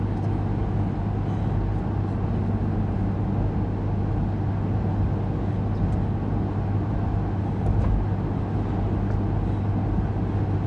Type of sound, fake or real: real